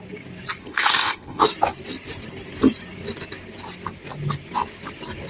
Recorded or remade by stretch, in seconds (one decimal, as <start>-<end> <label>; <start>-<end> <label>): 0.0-0.6 recorded; 0.6-1.4 remade; 1.4-5.3 recorded